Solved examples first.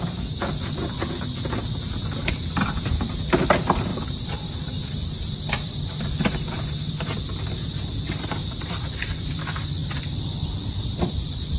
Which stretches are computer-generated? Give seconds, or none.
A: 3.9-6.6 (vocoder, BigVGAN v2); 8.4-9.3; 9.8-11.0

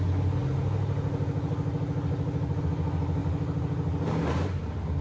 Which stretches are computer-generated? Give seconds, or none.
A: none

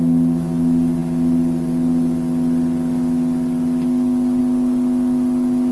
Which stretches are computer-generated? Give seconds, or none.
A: none

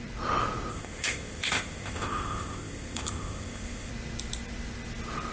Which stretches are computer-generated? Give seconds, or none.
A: 0.7-3.9 (codec, ZipCodec)

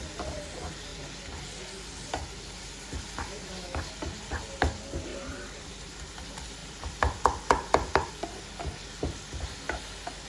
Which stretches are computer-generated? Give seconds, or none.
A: 5.1-5.7 (vocoder, BigVGAN v2); 6.6-8.1

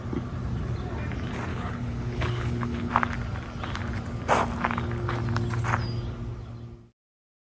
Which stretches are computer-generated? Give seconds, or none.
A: 1.5-2.9 (codec, HILCodec)